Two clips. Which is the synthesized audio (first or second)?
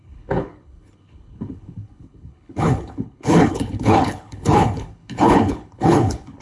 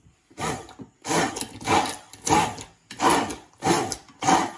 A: first